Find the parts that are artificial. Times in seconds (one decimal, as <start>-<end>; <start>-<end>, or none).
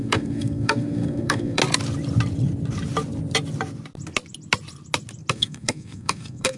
0.0-1.6; 5.3-6.6